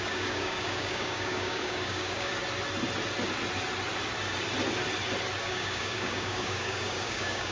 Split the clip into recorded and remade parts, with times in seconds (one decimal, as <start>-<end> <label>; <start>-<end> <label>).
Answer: 0.0-2.3 remade; 2.3-5.4 recorded; 5.4-7.5 remade